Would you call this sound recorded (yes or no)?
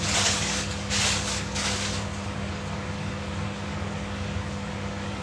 no